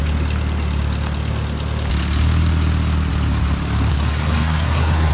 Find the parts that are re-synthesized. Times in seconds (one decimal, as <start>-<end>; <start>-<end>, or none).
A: 3.9-5.1